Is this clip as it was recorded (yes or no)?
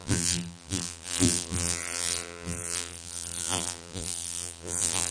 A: no